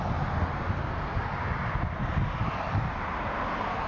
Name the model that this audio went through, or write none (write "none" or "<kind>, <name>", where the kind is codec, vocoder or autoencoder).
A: none